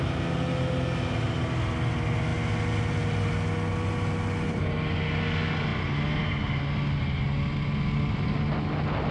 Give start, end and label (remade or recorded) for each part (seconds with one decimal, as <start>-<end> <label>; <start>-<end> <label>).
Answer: 0.0-9.1 recorded